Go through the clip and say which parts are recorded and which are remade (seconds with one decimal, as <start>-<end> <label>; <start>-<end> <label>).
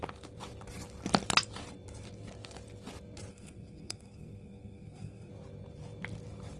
0.0-3.3 recorded; 3.3-5.3 remade; 5.3-6.6 recorded